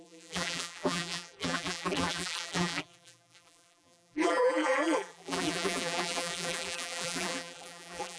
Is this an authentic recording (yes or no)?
no